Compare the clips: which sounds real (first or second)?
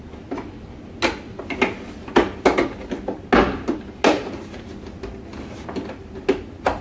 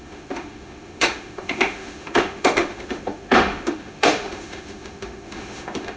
first